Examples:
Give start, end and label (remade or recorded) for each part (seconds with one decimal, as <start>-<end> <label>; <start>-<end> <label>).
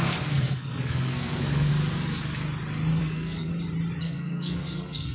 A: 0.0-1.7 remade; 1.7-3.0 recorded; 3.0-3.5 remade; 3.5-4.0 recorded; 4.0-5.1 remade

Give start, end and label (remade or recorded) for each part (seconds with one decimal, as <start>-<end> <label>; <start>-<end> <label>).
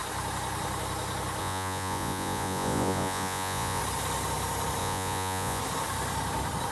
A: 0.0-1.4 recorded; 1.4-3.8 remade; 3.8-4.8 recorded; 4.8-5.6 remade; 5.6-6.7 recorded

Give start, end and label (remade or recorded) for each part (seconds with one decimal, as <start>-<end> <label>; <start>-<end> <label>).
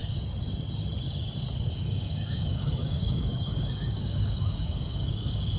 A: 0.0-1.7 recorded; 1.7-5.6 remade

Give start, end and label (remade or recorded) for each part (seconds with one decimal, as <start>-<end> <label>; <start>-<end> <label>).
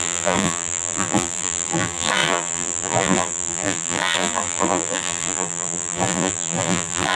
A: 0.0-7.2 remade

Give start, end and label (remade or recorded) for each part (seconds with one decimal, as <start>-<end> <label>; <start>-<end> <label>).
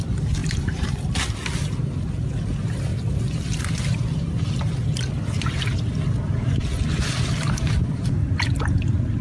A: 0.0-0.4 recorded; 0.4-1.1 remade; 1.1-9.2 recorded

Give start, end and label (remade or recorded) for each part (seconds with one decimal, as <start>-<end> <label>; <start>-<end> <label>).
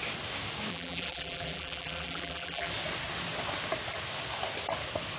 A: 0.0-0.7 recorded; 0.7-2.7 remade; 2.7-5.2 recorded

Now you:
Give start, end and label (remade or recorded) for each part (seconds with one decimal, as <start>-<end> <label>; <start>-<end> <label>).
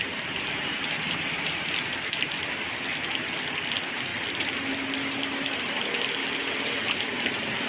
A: 0.0-7.7 recorded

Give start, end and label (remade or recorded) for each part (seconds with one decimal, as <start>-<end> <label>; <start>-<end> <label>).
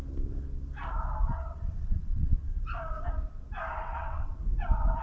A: 0.0-1.3 recorded; 1.3-2.5 remade; 2.5-3.8 recorded; 3.8-4.4 remade; 4.4-5.0 recorded